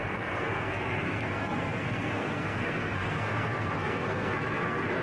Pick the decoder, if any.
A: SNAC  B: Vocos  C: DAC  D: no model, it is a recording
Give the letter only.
A